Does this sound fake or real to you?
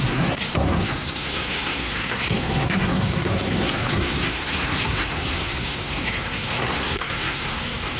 fake